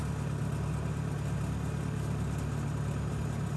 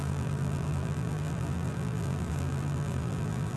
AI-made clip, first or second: second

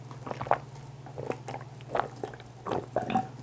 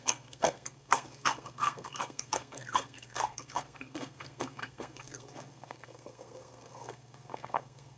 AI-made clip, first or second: second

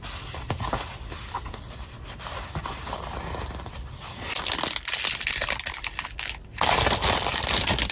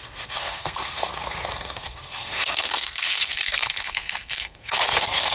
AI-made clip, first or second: second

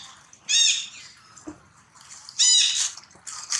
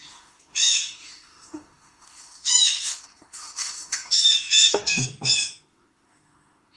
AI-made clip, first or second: second